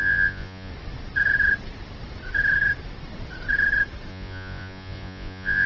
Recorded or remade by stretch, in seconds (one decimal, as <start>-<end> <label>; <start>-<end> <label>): 0.0-0.7 remade; 0.7-4.1 recorded; 4.1-5.7 remade

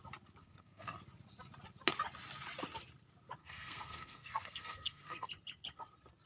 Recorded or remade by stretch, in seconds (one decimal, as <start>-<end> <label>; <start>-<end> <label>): 0.0-0.4 recorded; 0.4-1.0 remade; 1.0-3.4 recorded; 3.4-5.3 remade; 5.3-6.3 recorded

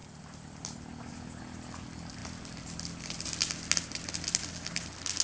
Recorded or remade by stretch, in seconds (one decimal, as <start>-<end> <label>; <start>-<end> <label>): 0.0-5.2 recorded

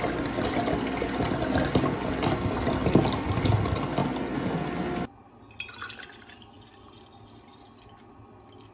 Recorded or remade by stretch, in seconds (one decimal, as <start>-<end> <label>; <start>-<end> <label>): 0.0-8.7 recorded

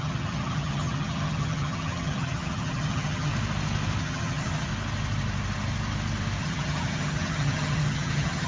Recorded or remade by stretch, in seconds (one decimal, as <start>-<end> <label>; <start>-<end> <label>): 0.0-3.3 remade; 3.3-4.0 recorded; 4.0-4.7 remade; 4.7-6.4 recorded; 6.4-8.5 remade

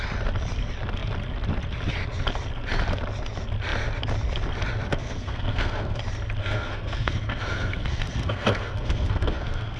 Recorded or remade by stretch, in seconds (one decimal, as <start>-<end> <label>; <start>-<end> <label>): 0.0-4.9 recorded; 4.9-6.0 remade; 6.0-6.4 recorded; 6.4-9.8 remade

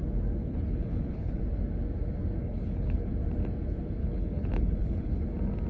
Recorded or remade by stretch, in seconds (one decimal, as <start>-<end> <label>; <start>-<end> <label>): 0.0-0.4 recorded; 0.4-1.4 remade; 1.4-2.4 recorded; 2.4-3.1 remade; 3.1-4.0 recorded; 4.0-5.2 remade; 5.2-5.7 recorded

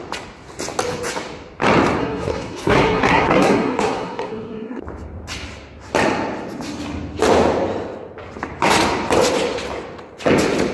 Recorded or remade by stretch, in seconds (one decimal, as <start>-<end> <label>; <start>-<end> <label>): 0.0-2.0 recorded; 2.0-4.8 remade; 4.8-10.7 recorded